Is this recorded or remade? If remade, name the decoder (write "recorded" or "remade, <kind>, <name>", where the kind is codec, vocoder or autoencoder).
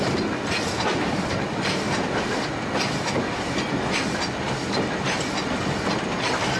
recorded